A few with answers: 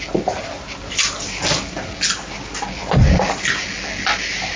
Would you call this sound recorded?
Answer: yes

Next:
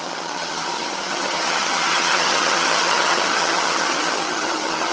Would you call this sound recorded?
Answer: no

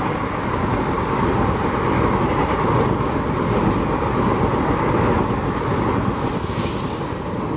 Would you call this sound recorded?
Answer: yes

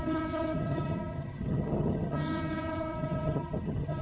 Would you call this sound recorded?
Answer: no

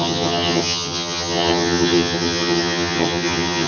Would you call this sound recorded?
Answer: no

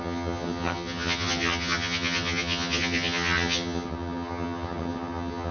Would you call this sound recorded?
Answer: no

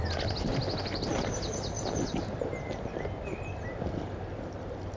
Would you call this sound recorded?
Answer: yes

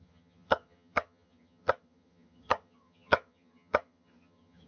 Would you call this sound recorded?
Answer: no